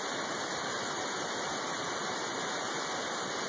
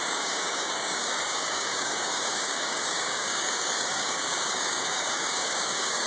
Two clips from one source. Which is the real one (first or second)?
first